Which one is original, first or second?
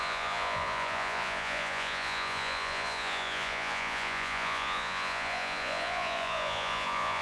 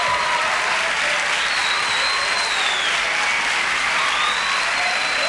second